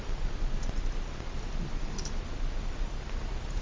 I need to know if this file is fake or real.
real